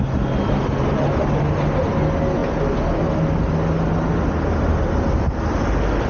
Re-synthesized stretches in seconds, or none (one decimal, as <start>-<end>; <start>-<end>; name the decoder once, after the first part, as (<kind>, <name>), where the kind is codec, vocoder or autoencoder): none